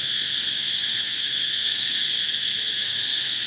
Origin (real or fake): fake